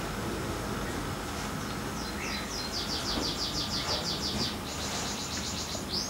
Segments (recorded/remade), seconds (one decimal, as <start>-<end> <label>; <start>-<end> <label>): 0.0-6.1 recorded